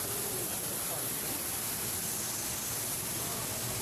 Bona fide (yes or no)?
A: yes